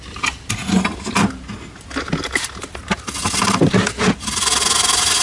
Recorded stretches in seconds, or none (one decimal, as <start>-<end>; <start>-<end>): 0.0-5.2